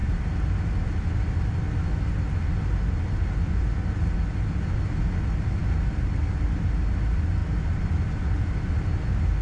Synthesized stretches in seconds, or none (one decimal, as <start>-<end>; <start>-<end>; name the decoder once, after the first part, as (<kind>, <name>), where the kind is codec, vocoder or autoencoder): none